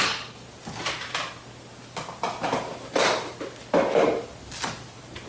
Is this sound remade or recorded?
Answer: recorded